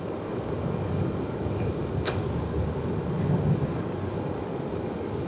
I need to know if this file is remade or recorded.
remade